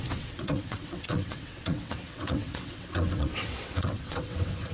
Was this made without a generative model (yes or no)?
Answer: no